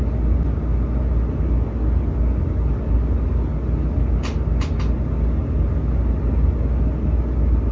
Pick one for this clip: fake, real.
real